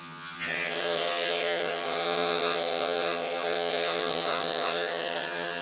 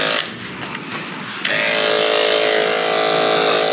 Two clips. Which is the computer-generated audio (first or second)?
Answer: first